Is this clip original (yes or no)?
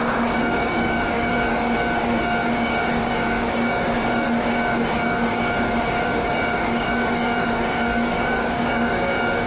no